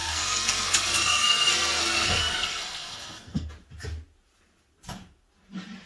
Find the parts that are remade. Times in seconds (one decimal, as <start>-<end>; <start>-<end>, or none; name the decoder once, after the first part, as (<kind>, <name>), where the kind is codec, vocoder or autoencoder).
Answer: 0.0-3.5 (codec, SNAC)